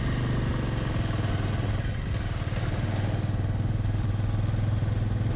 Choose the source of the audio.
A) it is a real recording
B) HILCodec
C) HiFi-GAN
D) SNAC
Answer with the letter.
A